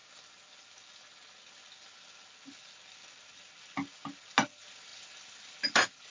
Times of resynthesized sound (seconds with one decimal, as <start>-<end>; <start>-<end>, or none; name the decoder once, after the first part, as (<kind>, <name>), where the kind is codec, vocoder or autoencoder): none